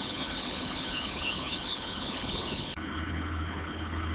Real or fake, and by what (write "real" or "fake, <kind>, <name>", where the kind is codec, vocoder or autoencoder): fake, codec, HILCodec